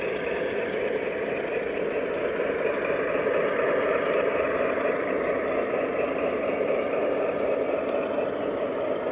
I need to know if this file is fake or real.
real